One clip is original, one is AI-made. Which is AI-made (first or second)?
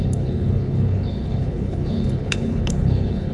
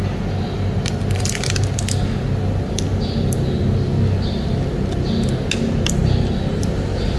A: first